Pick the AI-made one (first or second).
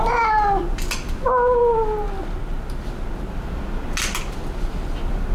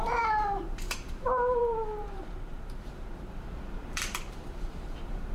second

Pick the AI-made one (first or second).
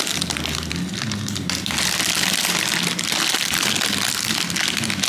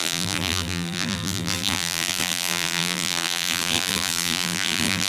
second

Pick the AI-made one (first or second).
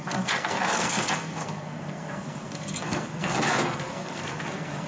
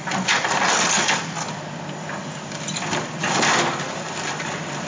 first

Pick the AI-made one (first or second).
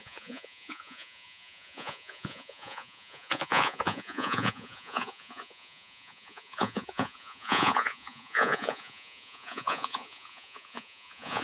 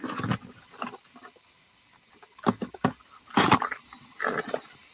first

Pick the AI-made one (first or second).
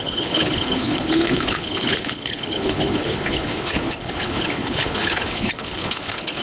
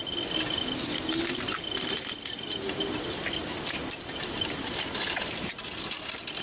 first